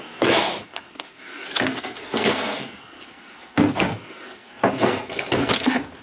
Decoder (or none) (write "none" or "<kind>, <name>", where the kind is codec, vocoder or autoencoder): codec, SNAC